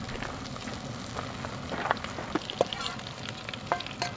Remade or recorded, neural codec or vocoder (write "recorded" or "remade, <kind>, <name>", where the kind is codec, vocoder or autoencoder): recorded